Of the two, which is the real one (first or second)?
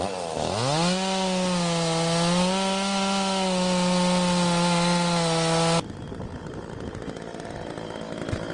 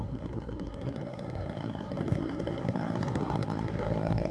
first